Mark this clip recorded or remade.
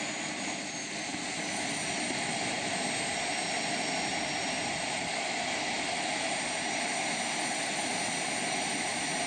recorded